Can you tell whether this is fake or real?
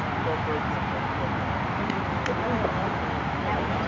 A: real